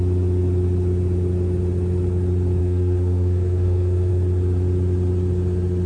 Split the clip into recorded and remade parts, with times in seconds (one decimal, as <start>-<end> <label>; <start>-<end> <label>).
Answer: 0.0-2.6 recorded; 2.6-4.1 remade; 4.1-5.9 recorded